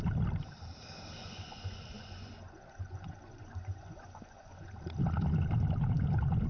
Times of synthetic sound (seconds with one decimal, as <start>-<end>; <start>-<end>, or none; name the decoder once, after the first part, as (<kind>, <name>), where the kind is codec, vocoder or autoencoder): 1.2-4.7 (vocoder, Vocos)